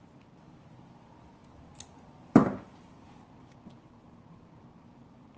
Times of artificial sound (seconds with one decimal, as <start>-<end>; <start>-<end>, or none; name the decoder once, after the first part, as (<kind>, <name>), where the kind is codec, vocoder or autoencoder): none